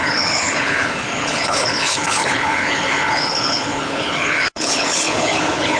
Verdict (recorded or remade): remade